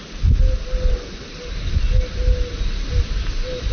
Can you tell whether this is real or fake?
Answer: real